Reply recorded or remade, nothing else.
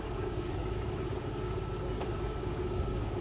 remade